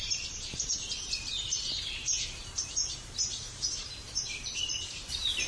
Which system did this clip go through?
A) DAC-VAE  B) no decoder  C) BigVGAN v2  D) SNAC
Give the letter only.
C